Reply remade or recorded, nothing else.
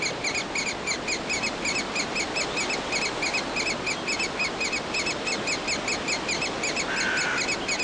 recorded